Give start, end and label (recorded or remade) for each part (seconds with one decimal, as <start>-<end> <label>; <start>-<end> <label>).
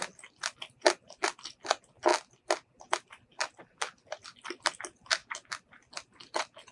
0.0-6.7 recorded